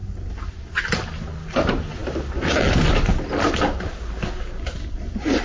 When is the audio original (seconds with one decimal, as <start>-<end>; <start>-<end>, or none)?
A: 0.0-5.4